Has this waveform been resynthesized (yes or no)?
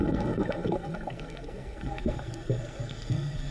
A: yes